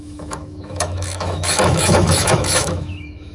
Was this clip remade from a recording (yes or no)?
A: yes